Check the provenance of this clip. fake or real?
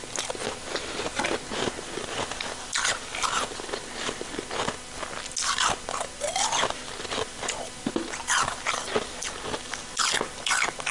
real